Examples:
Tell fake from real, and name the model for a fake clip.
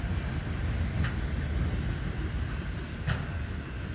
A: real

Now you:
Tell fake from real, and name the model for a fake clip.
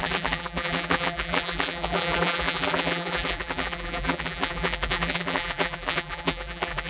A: fake, vocoder, BigVGAN v2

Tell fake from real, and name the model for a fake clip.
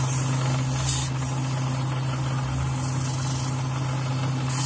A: real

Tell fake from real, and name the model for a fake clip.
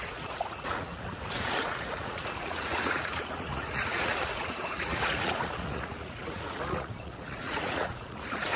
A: fake, vocoder, Vocos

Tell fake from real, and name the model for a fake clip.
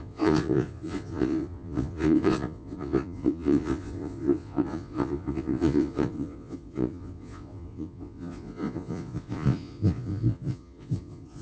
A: fake, vocoder, Vocos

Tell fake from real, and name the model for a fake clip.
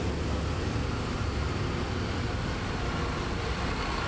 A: real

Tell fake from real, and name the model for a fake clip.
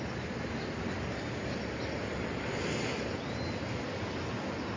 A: real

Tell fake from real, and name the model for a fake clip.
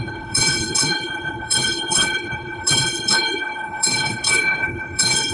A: fake, codec, HILCodec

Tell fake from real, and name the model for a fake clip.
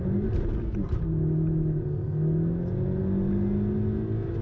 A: real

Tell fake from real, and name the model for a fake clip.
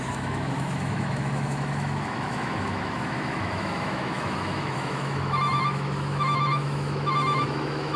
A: fake, autoencoder, DAC-VAE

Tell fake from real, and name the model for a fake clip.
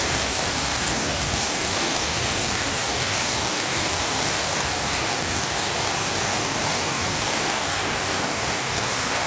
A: fake, codec, DAC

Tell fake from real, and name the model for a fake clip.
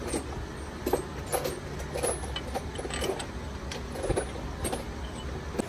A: real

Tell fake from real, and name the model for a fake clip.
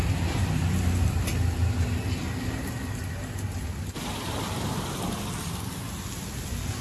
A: real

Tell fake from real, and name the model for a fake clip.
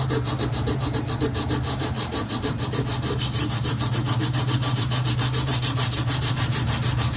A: fake, vocoder, BigVGAN v2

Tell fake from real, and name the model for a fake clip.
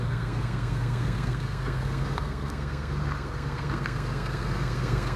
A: fake, codec, SNAC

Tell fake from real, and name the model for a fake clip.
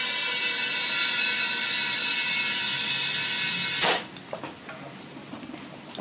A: real